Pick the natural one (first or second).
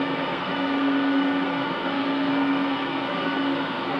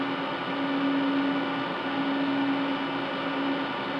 second